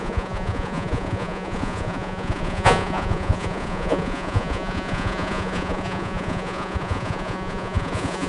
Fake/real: fake